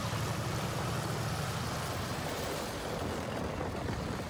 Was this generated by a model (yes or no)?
no